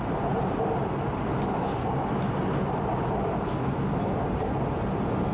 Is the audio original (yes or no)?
yes